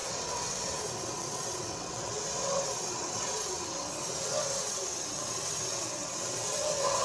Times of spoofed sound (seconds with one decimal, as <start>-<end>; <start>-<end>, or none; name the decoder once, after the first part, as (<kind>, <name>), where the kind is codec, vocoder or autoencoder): 0.0-7.0 (vocoder, WaveNeXt)